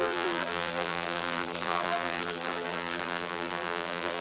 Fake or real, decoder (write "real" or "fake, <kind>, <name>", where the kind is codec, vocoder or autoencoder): fake, vocoder, BigVGAN v2